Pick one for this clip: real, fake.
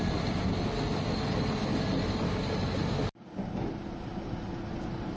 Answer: real